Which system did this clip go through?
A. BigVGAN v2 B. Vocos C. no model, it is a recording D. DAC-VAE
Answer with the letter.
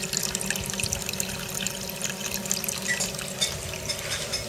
C